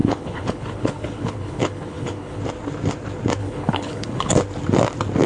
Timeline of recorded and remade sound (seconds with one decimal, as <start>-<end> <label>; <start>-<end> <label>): 0.0-2.4 remade; 2.4-3.4 recorded; 3.4-4.3 remade; 4.3-5.3 recorded